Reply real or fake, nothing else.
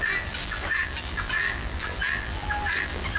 fake